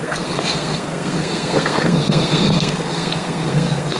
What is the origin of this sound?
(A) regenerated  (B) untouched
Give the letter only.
A